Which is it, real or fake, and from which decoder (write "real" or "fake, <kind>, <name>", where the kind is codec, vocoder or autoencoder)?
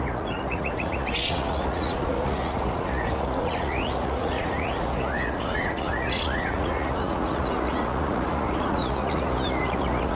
fake, vocoder, Vocos